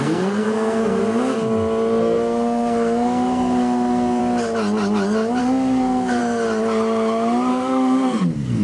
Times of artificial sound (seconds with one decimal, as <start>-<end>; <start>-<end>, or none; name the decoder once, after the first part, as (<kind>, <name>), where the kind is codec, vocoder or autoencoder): 0.0-1.0 (codec, SNAC); 2.0-4.2; 5.4-6.2; 7.5-8.6